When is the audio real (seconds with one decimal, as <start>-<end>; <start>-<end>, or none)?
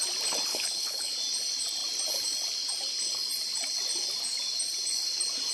0.0-0.5; 1.1-5.5